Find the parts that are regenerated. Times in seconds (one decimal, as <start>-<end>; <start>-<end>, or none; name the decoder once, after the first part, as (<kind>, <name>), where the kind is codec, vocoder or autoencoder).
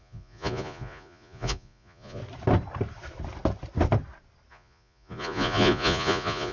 0.0-2.2 (vocoder, Vocos); 4.5-6.5